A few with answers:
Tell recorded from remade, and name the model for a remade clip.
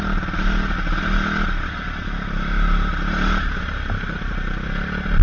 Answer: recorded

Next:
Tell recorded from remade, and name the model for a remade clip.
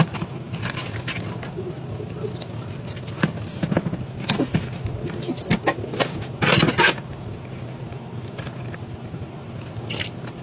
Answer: recorded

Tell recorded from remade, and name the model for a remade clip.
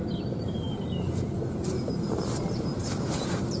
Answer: remade, vocoder, BigVGAN v2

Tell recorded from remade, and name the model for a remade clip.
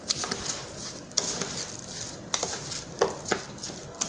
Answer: recorded